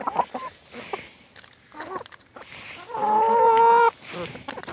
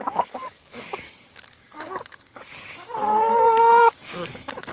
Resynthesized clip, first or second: second